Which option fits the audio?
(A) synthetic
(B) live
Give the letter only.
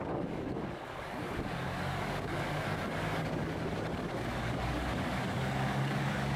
A